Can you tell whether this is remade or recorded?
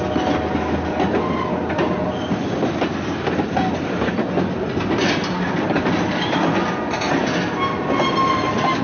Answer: recorded